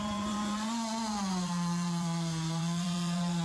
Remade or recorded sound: remade